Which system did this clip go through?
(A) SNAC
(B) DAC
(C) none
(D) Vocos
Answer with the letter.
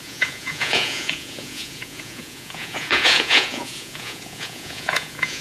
D